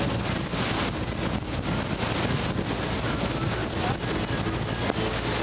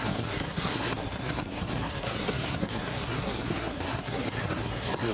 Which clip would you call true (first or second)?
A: first